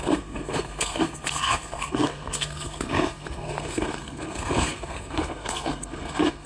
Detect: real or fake fake